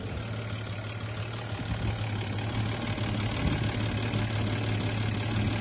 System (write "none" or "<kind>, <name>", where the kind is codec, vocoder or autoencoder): none